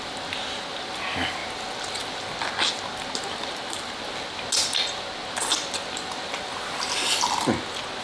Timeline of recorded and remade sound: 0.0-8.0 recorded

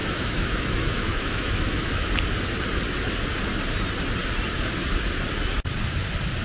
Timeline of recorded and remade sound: 0.0-2.1 remade; 2.1-6.4 recorded

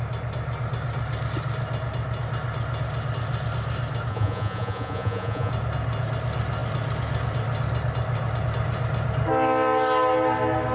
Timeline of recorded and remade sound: 0.0-4.1 recorded; 4.1-5.5 remade; 5.5-10.7 recorded

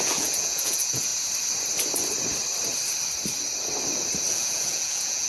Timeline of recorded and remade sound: 0.0-1.1 remade; 1.1-4.3 recorded; 4.3-5.3 remade